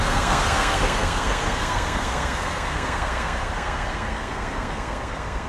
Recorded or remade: remade